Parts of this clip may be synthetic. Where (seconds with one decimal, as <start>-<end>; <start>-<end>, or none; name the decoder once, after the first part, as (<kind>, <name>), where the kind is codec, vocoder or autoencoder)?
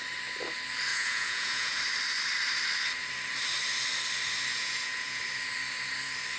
0.9-1.8 (vocoder, Vocos); 4.5-5.2